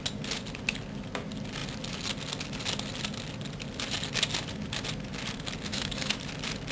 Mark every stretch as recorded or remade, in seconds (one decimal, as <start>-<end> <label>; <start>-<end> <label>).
0.0-5.7 recorded; 5.7-6.2 remade; 6.2-6.7 recorded